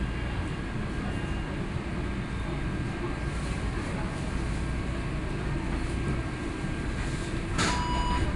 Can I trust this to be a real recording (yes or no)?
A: yes